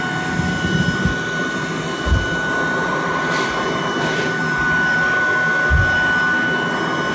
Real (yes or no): yes